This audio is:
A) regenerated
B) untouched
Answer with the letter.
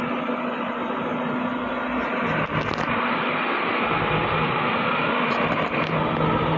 B